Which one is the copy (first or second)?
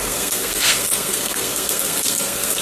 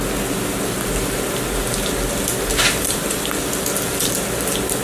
first